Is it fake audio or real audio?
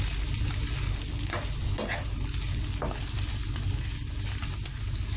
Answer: real